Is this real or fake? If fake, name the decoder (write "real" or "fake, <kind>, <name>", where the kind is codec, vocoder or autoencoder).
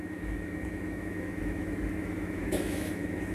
fake, autoencoder, DAC-VAE